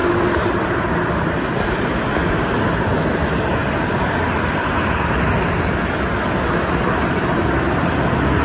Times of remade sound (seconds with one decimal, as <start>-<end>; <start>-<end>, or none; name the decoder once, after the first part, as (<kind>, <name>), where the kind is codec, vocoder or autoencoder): none